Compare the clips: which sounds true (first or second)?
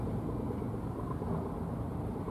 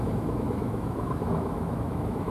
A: first